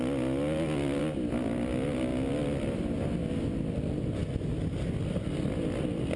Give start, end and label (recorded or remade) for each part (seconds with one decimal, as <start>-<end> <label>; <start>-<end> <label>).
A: 0.0-6.2 recorded